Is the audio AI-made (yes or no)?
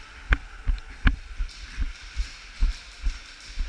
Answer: no